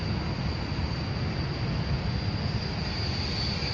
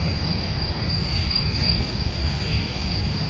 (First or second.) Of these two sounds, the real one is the first